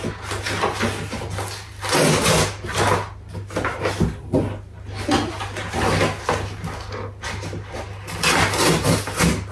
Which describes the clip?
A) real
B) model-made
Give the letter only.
A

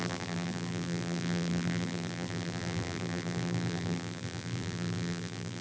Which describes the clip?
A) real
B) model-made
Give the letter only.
B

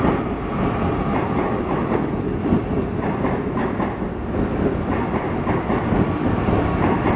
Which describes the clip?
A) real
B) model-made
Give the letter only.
A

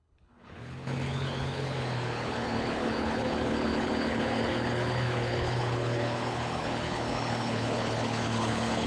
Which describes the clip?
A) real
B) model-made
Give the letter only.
B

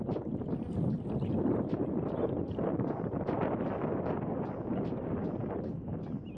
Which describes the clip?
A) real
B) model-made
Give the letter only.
A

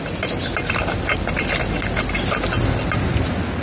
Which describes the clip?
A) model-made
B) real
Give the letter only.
B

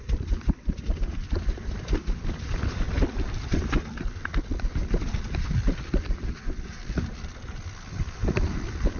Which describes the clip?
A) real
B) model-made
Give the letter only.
A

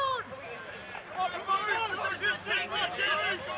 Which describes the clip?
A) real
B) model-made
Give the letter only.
A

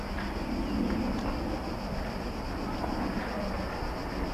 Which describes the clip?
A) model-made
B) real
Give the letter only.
B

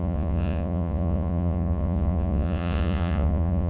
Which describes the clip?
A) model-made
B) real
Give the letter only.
A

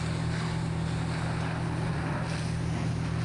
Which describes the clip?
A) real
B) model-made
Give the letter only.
A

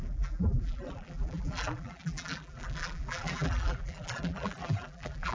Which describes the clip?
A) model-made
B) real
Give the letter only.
A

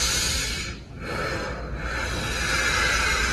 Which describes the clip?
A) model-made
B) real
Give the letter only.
B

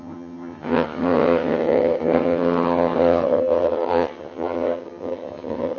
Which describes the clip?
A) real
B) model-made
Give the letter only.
B